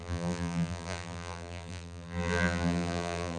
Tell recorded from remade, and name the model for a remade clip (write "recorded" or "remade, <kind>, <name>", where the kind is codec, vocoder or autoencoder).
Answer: remade, vocoder, BigVGAN v2